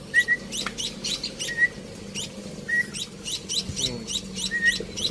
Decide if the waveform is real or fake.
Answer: real